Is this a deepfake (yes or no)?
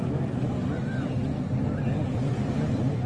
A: no